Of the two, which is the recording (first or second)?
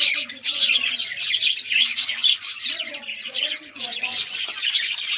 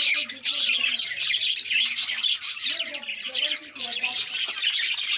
second